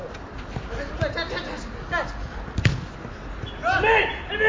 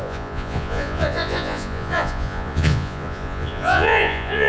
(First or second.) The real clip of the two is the first